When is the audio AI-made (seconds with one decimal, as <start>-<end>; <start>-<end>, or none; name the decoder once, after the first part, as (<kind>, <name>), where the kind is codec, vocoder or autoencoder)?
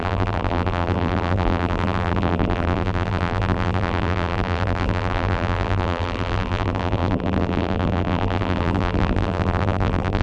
0.0-10.2 (vocoder, BigVGAN v2)